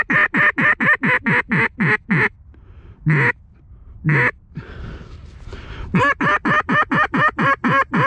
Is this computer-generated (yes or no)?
no